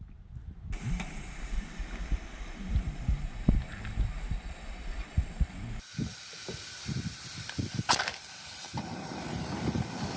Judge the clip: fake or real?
real